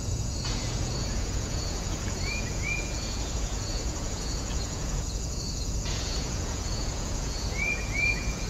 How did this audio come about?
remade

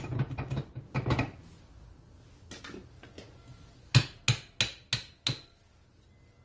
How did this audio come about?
recorded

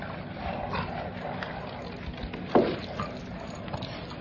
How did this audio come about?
recorded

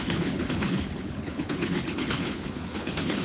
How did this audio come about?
remade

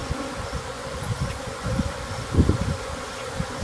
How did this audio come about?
remade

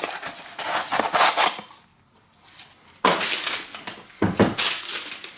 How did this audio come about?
recorded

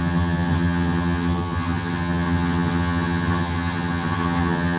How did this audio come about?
remade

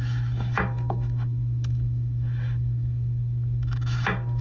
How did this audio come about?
remade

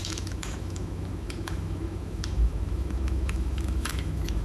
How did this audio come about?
remade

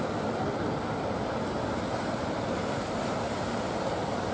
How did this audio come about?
recorded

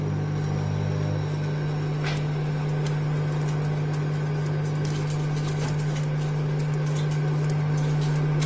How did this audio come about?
recorded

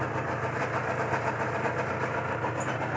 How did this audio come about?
recorded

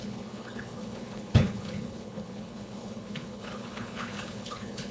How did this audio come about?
remade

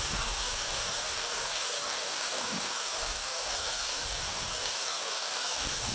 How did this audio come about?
remade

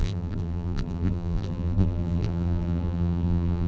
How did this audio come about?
remade